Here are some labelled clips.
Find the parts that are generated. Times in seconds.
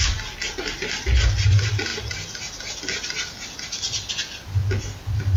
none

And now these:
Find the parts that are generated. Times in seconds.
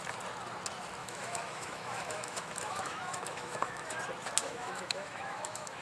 1.0-4.0 (autoencoder, DAC-VAE); 4.4-5.8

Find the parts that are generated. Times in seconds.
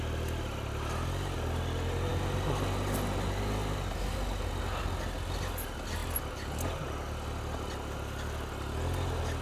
none